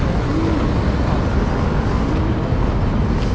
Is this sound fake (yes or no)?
no